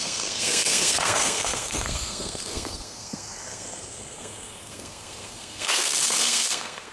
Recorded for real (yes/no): no